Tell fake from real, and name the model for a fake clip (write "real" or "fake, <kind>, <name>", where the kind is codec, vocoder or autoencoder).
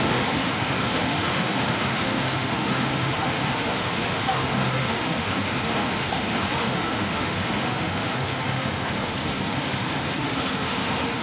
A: fake, autoencoder, DAC-VAE